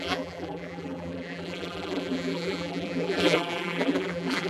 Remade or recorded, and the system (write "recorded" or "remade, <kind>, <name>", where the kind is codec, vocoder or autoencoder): remade, vocoder, BigVGAN v2